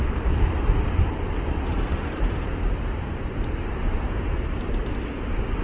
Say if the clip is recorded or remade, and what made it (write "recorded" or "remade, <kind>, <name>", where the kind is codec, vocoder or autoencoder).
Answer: remade, vocoder, BigVGAN v2